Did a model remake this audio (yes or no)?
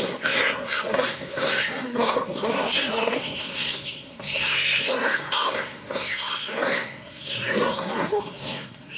yes